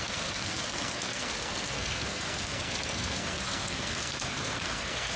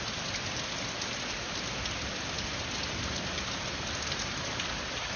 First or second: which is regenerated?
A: first